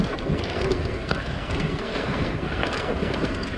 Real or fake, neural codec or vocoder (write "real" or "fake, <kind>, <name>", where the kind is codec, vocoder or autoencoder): fake, codec, SNAC